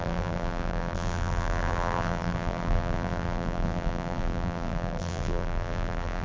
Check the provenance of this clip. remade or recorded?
remade